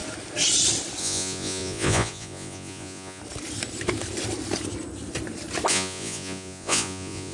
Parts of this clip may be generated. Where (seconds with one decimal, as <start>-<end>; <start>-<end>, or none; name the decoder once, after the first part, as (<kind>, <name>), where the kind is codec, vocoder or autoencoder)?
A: 1.0-3.2 (vocoder, Vocos); 5.7-7.3